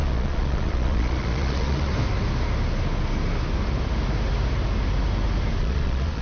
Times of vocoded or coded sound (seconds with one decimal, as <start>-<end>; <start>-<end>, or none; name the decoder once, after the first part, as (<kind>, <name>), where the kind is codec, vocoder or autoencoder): 0.0-1.9 (vocoder, Vocos); 5.6-6.2